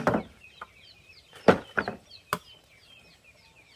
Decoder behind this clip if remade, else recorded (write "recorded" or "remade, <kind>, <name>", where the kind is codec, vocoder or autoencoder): recorded